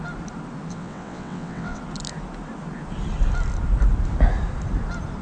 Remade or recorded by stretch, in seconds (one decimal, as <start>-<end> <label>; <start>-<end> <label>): 0.0-0.7 recorded; 0.7-1.8 remade; 1.8-5.2 recorded

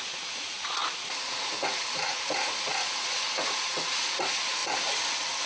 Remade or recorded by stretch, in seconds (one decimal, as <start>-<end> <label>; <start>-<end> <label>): 0.0-4.6 remade; 4.6-5.5 recorded

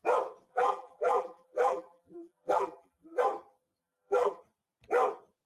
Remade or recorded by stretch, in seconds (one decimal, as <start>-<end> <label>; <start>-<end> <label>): 0.0-0.5 recorded; 0.5-3.2 remade; 3.2-3.8 recorded; 3.8-4.4 remade; 4.4-5.5 recorded

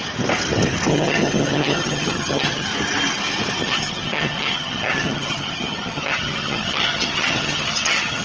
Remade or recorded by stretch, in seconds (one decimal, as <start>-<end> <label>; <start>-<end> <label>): 0.0-0.9 recorded; 0.9-2.7 remade; 2.7-3.6 recorded; 3.6-8.2 remade

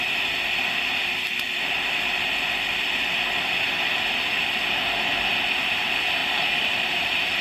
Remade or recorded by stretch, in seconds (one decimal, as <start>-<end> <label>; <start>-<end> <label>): 0.0-1.3 recorded; 1.3-2.7 remade; 2.7-6.2 recorded; 6.2-7.4 remade

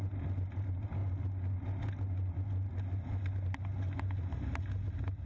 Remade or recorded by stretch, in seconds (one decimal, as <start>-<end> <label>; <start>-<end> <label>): 0.0-5.3 recorded

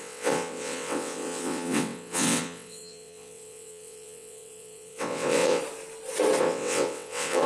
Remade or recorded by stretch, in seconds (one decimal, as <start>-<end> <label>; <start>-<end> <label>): 0.0-5.6 remade; 5.6-6.4 recorded; 6.4-7.5 remade

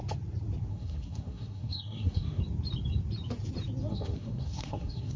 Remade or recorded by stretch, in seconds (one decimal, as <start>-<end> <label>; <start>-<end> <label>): 0.0-0.7 recorded; 0.7-2.4 remade; 2.4-3.9 recorded; 3.9-5.2 remade